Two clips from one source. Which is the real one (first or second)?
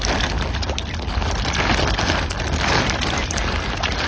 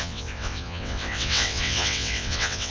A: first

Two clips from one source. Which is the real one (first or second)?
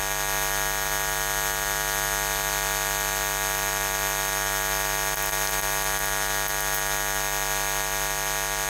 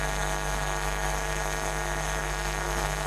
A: first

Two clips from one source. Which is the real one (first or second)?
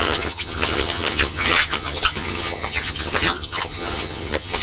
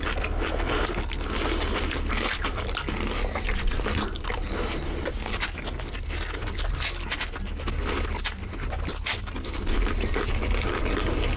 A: second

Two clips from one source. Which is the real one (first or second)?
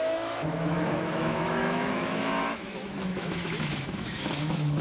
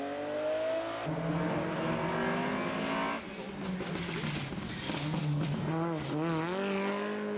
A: second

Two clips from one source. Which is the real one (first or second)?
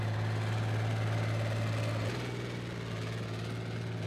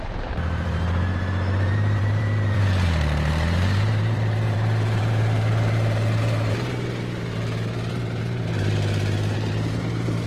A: first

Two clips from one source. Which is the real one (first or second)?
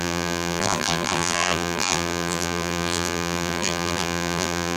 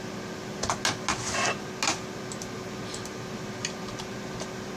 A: second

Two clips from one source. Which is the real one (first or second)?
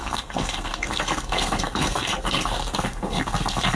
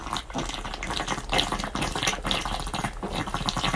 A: second